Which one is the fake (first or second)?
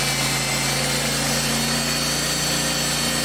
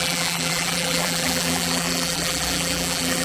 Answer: second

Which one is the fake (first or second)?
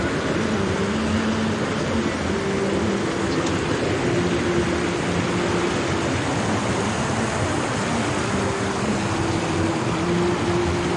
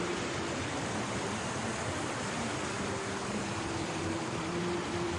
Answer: second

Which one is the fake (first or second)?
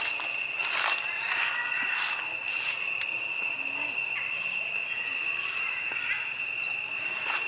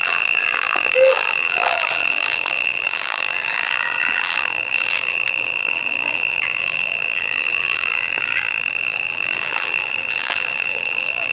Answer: second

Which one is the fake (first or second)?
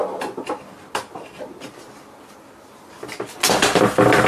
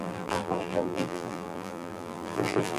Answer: second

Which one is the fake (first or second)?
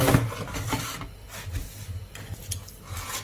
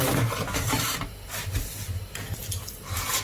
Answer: second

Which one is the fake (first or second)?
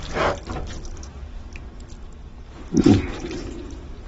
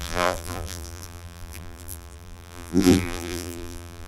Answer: second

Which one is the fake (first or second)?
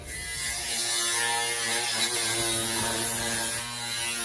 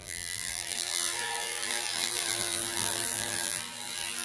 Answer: second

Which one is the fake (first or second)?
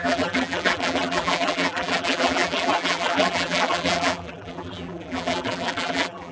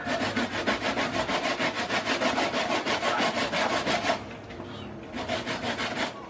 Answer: first